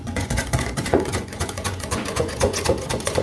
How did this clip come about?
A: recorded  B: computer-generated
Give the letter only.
B